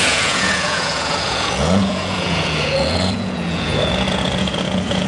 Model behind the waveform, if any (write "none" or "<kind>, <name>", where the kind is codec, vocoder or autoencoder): vocoder, Vocos